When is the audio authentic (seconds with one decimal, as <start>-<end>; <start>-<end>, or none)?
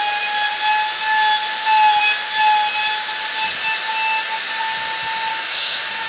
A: 0.0-5.3